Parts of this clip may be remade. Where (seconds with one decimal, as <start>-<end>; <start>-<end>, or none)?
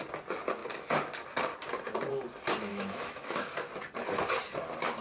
2.7-3.7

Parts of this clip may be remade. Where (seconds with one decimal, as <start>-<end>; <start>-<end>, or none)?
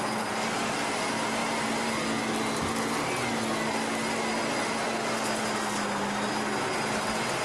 none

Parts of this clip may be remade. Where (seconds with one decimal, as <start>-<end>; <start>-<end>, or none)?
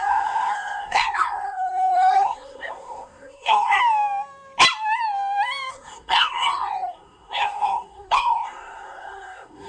0.0-3.8; 5.7-9.7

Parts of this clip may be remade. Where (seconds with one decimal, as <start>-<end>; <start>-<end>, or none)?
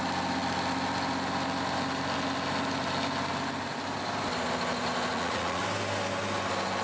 5.1-5.6